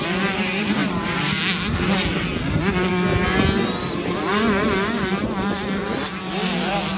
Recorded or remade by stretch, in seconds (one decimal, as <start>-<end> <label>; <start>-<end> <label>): 0.0-0.8 recorded; 0.8-1.4 remade; 1.4-7.0 recorded

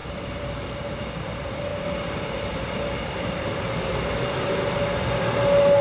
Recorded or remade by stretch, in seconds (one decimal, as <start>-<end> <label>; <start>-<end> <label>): 0.0-1.1 remade; 1.1-1.7 recorded; 1.7-5.2 remade; 5.2-5.8 recorded

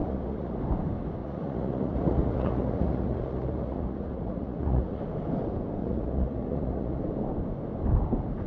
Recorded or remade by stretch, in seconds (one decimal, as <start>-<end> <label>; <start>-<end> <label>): 0.0-0.6 remade; 0.6-1.2 recorded; 1.2-5.0 remade; 5.0-5.8 recorded; 5.8-7.0 remade; 7.0-8.5 recorded